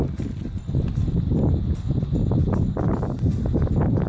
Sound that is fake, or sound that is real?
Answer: real